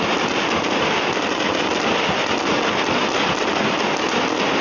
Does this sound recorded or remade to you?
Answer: recorded